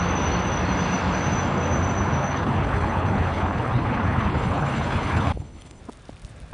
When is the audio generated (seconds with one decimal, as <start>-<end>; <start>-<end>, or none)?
2.2-5.8